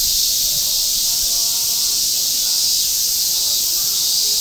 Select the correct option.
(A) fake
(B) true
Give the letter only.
A